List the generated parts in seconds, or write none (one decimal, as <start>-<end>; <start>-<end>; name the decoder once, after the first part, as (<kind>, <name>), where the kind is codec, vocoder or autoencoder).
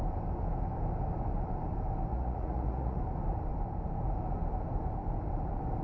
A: 2.1-3.0 (vocoder, Vocos)